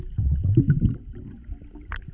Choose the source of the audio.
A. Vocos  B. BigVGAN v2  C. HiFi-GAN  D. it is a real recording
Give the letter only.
D